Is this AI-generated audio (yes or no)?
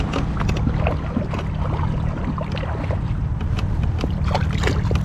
no